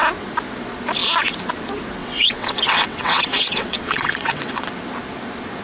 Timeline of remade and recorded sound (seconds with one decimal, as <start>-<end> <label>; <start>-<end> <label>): 0.0-2.0 recorded; 2.0-4.7 remade; 4.7-5.6 recorded

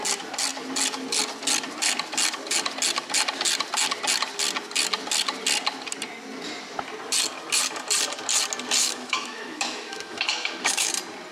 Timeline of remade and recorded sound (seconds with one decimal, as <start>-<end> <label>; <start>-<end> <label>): 0.0-8.8 recorded; 8.8-10.9 remade; 10.9-11.3 recorded